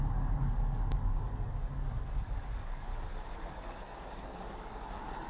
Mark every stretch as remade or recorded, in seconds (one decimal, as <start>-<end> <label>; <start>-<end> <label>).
0.0-2.9 remade; 2.9-3.5 recorded; 3.5-5.3 remade